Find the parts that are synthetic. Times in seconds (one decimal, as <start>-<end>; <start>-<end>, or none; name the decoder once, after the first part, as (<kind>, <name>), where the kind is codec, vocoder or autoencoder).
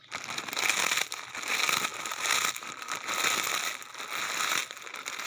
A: none